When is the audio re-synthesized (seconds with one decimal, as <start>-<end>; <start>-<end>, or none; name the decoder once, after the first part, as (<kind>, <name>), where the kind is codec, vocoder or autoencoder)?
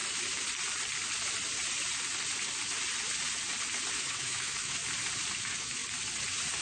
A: 4.0-4.8 (autoencoder, DAC-VAE); 5.3-5.8